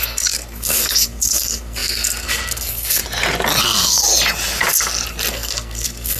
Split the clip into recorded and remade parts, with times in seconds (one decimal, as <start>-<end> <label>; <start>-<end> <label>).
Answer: 0.0-3.0 remade; 3.0-3.6 recorded; 3.6-4.1 remade; 4.1-5.3 recorded; 5.3-6.2 remade